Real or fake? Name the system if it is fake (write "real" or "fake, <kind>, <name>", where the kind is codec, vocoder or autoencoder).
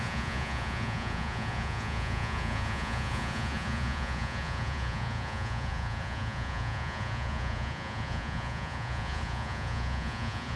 fake, vocoder, Vocos